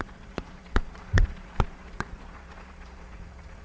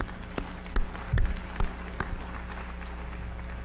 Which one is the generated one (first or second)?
first